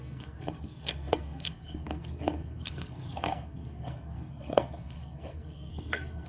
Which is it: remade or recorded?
remade